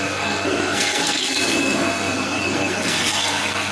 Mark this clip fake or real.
fake